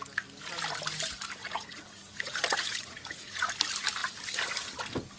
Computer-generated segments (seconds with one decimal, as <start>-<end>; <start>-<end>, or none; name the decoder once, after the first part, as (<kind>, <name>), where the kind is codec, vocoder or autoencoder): 1.4-3.5 (vocoder, Vocos)